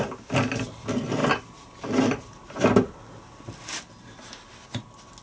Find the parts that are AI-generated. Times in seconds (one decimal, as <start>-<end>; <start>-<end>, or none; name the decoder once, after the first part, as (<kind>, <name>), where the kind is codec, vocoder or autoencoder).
none